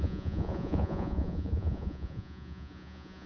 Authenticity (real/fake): fake